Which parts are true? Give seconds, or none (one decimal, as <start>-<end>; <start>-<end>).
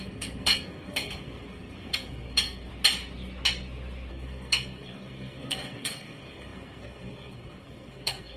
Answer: 2.7-4.1